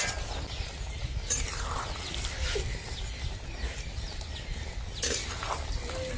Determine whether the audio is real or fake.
real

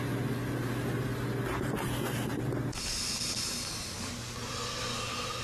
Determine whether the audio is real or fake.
real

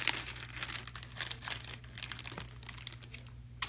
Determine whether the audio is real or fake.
real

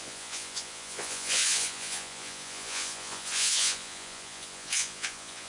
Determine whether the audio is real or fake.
fake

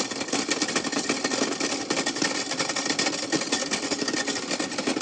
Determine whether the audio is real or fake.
real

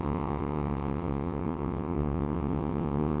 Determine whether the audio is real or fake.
fake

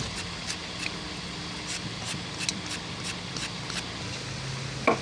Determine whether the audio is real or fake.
real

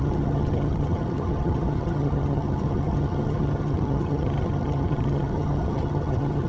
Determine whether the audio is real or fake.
fake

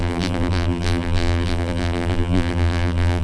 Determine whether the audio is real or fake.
fake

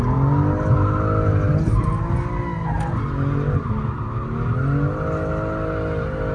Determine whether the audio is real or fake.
real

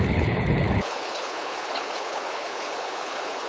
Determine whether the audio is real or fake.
fake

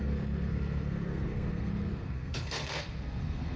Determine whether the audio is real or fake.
fake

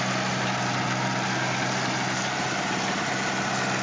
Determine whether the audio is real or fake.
real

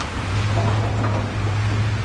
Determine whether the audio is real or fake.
real